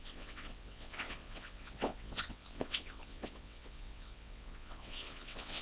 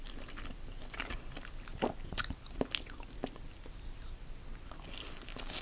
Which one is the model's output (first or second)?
first